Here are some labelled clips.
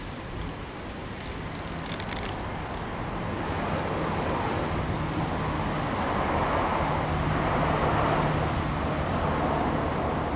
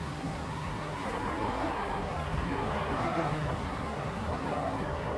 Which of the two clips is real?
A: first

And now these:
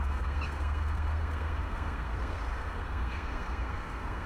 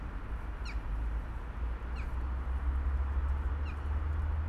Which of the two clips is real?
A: second